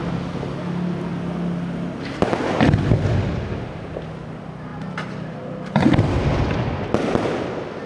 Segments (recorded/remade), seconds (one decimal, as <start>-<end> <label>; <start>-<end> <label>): 0.0-4.7 recorded; 4.7-6.2 remade; 6.2-7.9 recorded